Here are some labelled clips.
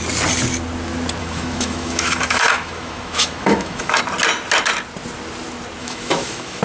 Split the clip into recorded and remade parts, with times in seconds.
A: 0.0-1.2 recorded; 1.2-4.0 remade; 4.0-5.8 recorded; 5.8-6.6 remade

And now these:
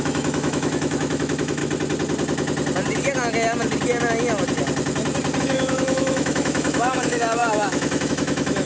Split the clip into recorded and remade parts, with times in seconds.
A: 0.0-1.6 remade; 1.6-5.4 recorded; 5.4-8.7 remade

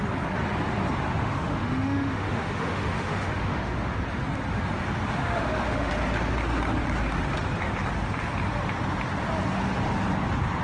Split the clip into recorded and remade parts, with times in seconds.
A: 0.0-1.2 recorded; 1.2-4.0 remade; 4.0-5.2 recorded; 5.2-5.9 remade; 5.9-10.6 recorded

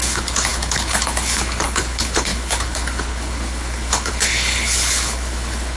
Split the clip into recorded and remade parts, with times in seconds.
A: 0.0-5.8 remade

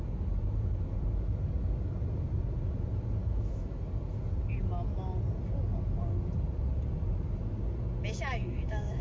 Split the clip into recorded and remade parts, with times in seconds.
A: 0.0-3.2 recorded; 3.2-3.8 remade; 3.8-8.4 recorded; 8.4-9.0 remade

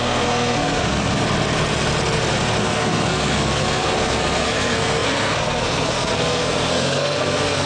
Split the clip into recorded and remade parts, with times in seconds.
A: 0.0-1.1 remade; 1.1-2.6 recorded; 2.6-7.7 remade

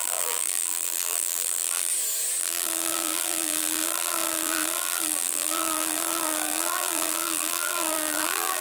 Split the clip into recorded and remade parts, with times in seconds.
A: 0.0-1.9 remade; 1.9-2.4 recorded; 2.4-8.6 remade

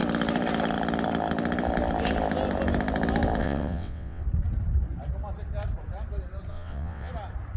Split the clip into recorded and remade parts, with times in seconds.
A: 0.0-3.4 recorded; 3.4-4.2 remade; 4.2-6.5 recorded; 6.5-7.1 remade; 7.1-7.6 recorded